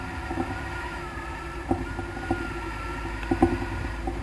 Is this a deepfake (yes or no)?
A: no